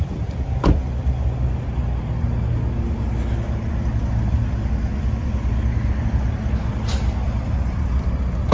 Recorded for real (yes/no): yes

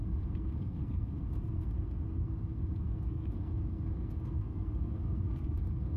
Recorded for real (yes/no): no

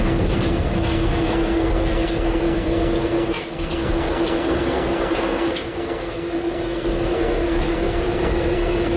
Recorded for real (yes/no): no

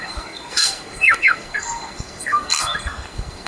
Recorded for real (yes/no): no